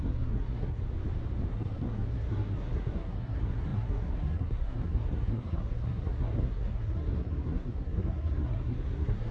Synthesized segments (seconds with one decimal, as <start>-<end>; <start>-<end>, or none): 0.0-0.8; 1.5-9.3